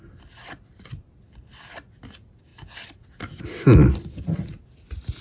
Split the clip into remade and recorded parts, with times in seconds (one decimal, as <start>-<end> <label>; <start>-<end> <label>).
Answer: 0.0-5.2 recorded